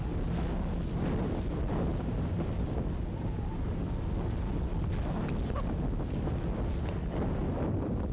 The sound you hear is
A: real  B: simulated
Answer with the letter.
A